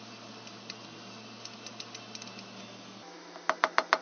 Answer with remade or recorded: recorded